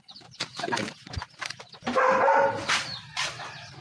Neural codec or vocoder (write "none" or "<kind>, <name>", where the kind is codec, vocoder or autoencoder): vocoder, BigVGAN v2